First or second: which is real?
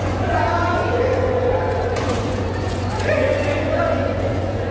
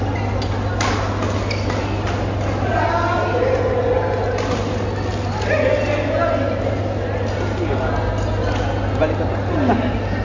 second